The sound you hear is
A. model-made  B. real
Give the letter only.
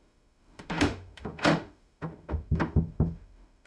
A